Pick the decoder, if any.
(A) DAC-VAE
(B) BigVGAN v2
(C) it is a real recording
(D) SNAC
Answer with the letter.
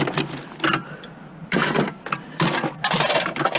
C